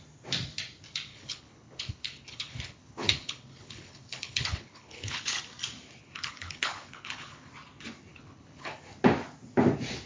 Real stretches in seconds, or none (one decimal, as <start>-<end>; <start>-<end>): 0.0-1.1; 5.4-6.0; 7.5-8.1; 8.7-10.1